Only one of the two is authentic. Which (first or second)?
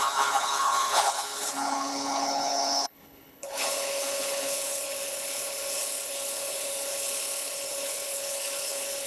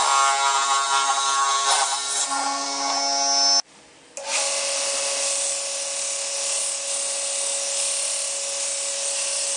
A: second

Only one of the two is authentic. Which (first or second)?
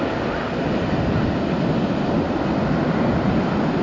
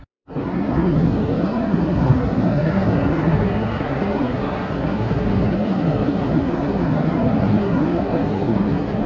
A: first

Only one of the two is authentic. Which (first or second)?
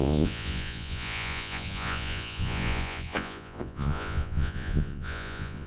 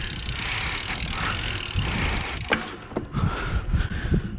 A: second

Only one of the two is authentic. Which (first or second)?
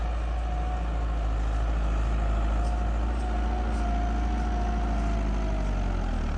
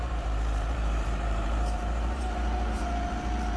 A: first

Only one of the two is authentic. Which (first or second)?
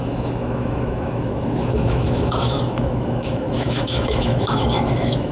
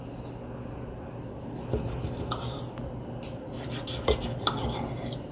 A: second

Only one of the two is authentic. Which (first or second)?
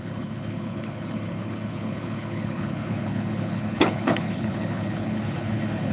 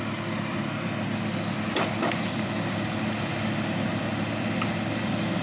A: second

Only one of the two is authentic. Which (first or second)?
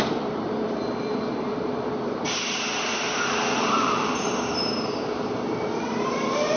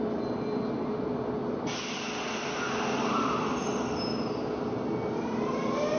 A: second